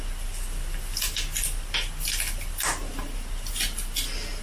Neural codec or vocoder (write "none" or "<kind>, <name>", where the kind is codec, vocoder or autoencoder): none